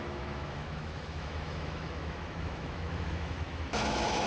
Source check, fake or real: fake